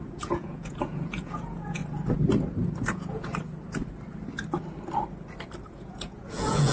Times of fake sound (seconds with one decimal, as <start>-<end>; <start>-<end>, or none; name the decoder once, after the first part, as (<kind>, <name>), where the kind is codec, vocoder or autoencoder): 0.0-1.8 (vocoder, Vocos); 2.9-3.3; 5.7-6.7